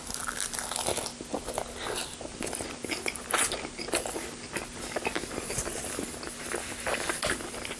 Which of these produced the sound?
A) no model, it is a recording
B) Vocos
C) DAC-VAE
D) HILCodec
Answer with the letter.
A